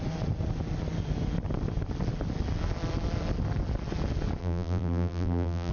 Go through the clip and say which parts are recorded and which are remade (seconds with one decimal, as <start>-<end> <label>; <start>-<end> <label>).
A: 0.0-4.4 recorded; 4.4-5.7 remade